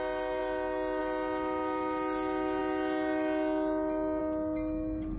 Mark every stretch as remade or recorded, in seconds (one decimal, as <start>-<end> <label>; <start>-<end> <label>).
0.0-5.2 recorded